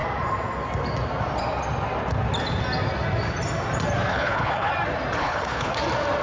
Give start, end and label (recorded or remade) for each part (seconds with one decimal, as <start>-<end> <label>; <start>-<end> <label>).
0.0-4.1 recorded; 4.1-4.7 remade; 4.7-5.2 recorded; 5.2-5.7 remade; 5.7-6.2 recorded